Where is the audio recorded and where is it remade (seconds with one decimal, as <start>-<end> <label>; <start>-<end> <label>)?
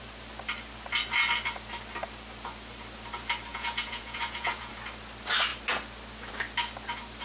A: 0.0-3.5 recorded; 3.5-4.7 remade; 4.7-7.2 recorded